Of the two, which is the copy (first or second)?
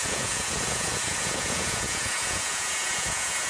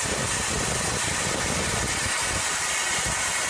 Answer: first